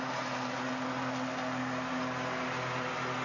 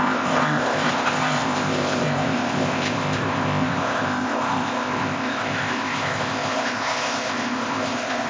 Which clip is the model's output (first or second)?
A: second